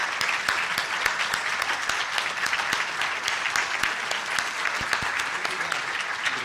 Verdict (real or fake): real